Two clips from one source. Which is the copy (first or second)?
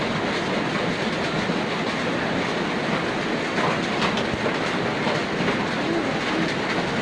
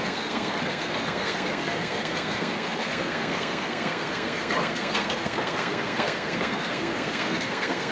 second